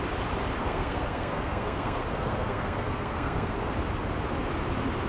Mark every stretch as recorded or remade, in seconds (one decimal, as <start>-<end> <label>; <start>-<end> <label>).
0.0-0.6 recorded; 0.6-3.7 remade; 3.7-5.1 recorded